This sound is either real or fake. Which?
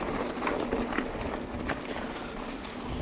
real